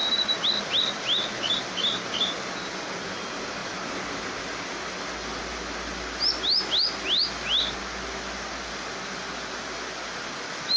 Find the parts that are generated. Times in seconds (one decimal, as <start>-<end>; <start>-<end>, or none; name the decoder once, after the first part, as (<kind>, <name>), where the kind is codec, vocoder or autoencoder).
none